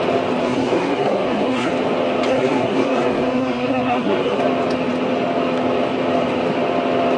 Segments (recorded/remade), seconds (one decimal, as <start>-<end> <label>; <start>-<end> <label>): 0.0-0.4 recorded; 0.4-1.7 remade; 1.7-2.3 recorded; 2.3-4.4 remade; 4.4-7.2 recorded